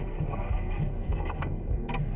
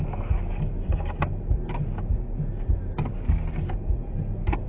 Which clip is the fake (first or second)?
first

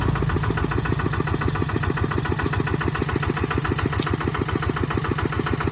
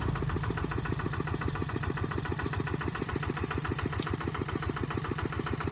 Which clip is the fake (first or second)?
second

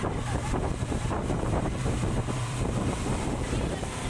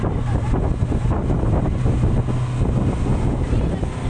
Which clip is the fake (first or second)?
first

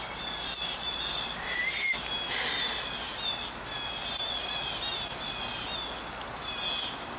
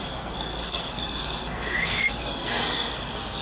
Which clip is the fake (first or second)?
second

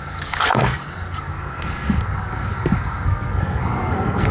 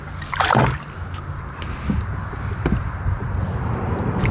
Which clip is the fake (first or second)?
first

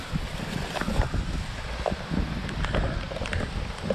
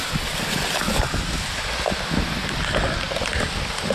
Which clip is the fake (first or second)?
first